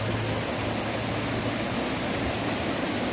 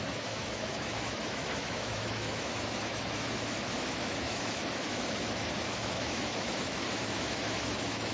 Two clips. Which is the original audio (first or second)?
first